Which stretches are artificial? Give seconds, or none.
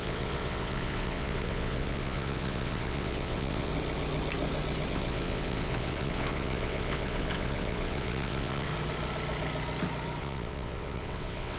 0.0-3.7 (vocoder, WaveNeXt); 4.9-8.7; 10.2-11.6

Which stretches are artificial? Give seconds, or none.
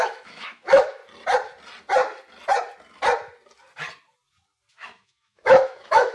0.0-1.0 (autoencoder, DAC-VAE); 4.7-6.1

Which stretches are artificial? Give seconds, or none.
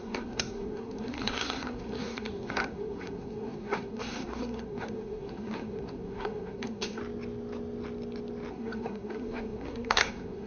0.0-7.0 (codec, SNAC); 8.5-10.5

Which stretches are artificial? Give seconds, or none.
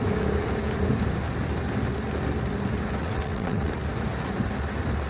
3.0-3.7 (vocoder, WaveNeXt)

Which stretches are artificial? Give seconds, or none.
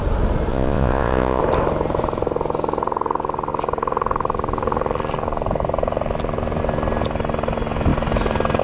0.5-1.4 (vocoder, Vocos)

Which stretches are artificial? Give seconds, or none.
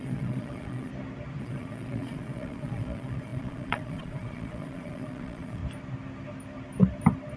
0.0-0.9 (vocoder, Vocos); 1.4-5.6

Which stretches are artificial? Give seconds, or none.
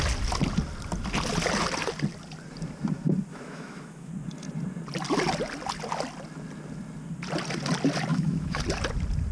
3.3-4.1 (autoencoder, DAC-VAE); 8.1-8.6